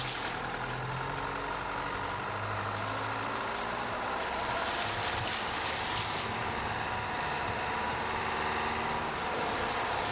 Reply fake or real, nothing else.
real